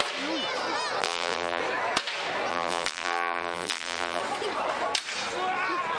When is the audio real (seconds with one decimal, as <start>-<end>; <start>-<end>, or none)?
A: 0.0-1.0; 1.6-2.5; 4.2-6.0